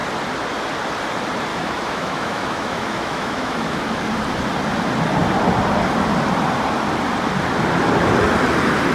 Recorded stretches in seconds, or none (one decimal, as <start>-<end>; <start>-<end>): 0.0-1.5; 4.0-8.9